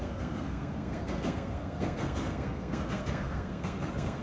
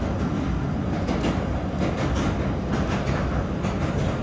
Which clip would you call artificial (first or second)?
first